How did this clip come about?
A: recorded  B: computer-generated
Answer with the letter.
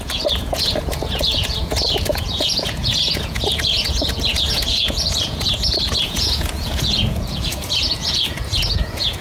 B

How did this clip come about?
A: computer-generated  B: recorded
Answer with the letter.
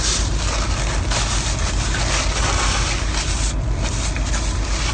B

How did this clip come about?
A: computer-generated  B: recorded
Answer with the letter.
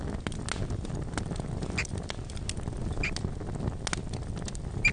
B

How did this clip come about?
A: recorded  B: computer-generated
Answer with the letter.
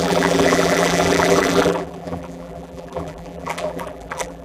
B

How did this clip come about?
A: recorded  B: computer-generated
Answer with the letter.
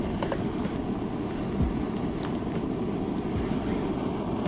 A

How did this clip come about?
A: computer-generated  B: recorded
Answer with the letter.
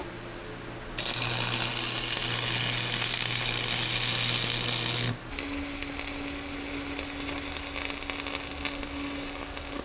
B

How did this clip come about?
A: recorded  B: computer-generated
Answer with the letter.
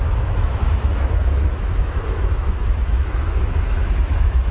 B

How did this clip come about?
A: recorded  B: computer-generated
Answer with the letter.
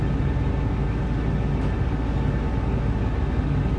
A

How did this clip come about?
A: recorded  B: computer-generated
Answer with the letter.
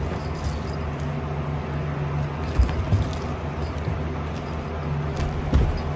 A